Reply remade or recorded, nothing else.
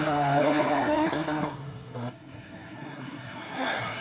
remade